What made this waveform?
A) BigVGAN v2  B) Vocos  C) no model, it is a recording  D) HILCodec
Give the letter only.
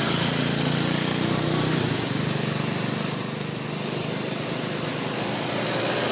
C